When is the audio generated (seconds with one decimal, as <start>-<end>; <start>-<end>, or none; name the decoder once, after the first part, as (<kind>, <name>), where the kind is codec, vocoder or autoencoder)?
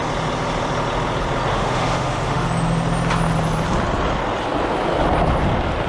1.5-2.5 (autoencoder, DAC-VAE)